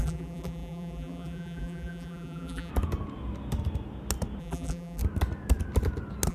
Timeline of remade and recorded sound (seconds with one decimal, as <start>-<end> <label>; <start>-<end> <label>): 0.0-2.7 remade; 2.7-4.4 recorded; 4.4-5.0 remade; 5.0-6.3 recorded